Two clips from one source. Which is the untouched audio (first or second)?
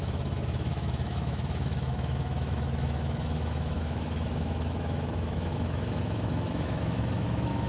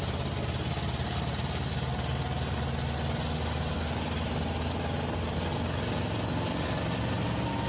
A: second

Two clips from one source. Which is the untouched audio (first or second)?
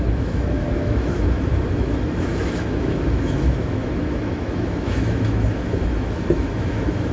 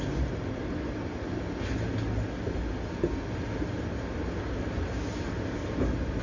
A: second